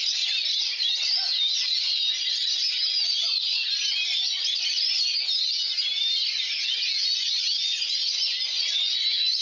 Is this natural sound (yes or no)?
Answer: yes